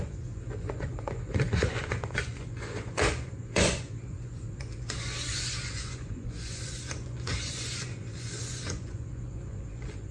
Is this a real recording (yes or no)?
no